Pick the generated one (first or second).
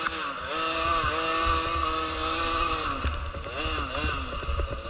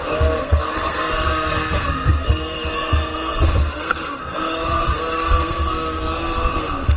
second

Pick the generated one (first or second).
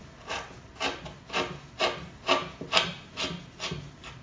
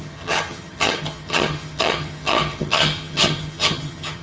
second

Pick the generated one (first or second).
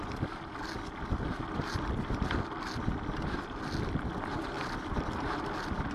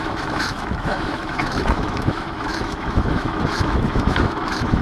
second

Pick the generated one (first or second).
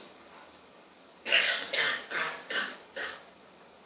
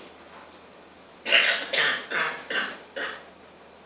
first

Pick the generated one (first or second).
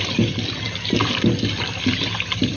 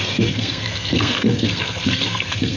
second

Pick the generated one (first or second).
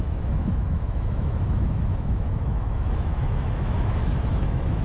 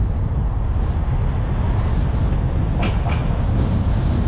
first